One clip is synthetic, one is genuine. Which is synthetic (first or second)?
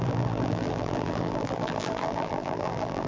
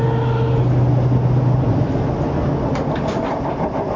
first